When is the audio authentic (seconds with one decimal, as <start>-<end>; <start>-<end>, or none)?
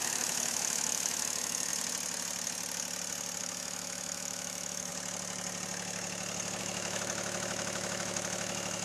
1.7-3.4; 4.9-6.6